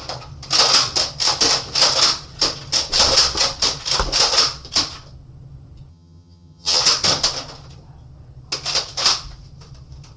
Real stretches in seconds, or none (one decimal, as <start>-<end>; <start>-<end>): 0.0-5.9; 6.8-10.2